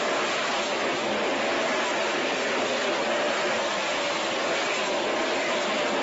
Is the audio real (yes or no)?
yes